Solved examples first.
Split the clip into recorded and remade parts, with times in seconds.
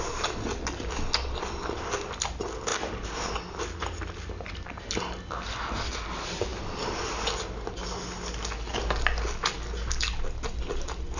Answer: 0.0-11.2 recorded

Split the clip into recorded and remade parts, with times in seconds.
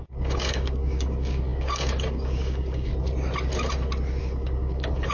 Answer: 0.0-2.9 remade; 2.9-4.2 recorded; 4.2-5.1 remade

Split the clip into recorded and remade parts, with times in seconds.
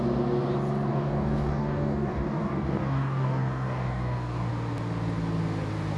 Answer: 0.0-0.9 recorded; 0.9-4.5 remade; 4.5-6.0 recorded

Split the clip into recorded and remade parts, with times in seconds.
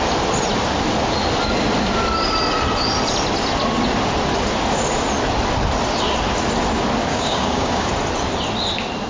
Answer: 0.0-7.1 recorded; 7.1-7.9 remade; 7.9-9.1 recorded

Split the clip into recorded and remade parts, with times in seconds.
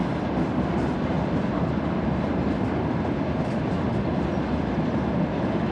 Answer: 0.0-5.7 recorded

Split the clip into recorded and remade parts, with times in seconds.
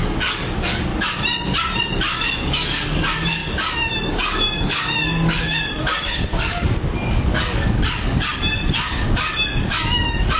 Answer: 0.0-0.9 remade; 0.9-1.8 recorded; 1.8-10.4 remade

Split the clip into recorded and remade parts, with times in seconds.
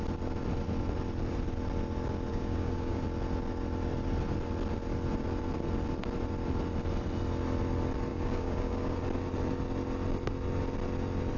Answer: 0.0-2.3 recorded; 2.3-3.0 remade; 3.0-8.1 recorded; 8.1-9.0 remade; 9.0-11.4 recorded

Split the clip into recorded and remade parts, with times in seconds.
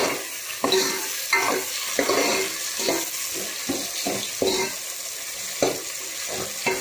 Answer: 0.0-0.5 recorded; 0.5-1.0 remade; 1.0-6.8 recorded